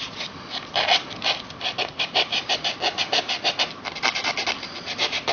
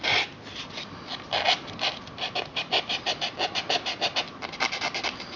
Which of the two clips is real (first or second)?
second